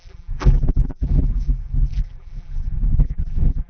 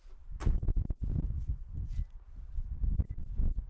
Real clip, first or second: second